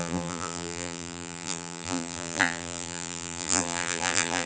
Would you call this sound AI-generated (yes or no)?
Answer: yes